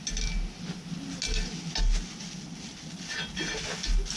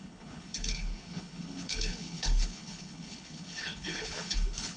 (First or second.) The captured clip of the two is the first